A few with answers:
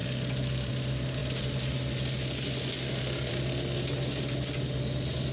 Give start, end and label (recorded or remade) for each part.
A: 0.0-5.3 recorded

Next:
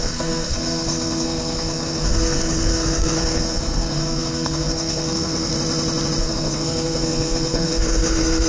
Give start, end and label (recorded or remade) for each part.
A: 0.0-5.5 remade; 5.5-6.2 recorded; 6.2-8.5 remade

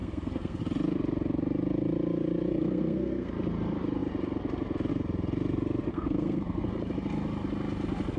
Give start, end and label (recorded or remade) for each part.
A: 0.0-0.6 remade; 0.6-2.5 recorded; 2.5-3.3 remade; 3.3-5.9 recorded; 5.9-6.6 remade; 6.6-8.2 recorded

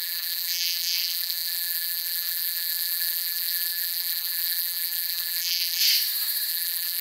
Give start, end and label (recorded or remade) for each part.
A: 0.0-5.8 remade; 5.8-6.5 recorded; 6.5-7.0 remade

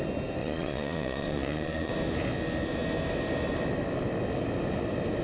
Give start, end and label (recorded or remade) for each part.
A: 0.0-0.4 recorded; 0.4-1.9 remade; 1.9-5.2 recorded